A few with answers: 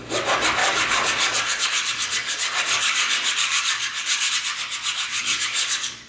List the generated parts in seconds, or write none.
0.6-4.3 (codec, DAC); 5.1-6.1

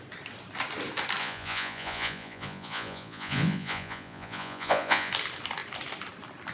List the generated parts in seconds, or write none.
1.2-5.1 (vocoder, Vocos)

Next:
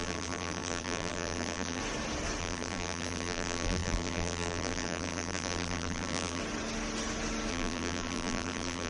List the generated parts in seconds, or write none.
0.0-1.8 (vocoder, BigVGAN v2); 2.4-6.4; 7.5-8.9